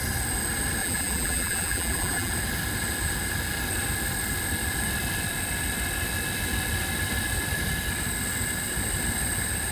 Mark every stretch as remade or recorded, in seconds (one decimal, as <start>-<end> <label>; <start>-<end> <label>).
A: 0.0-0.8 recorded; 0.8-2.3 remade; 2.3-9.7 recorded